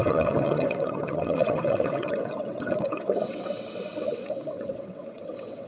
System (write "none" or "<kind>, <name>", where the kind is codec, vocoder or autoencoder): vocoder, WaveNeXt